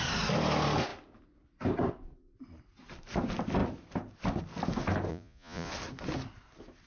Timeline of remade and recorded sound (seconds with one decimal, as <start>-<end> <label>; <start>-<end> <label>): 0.0-5.1 recorded; 5.1-5.7 remade; 5.7-6.9 recorded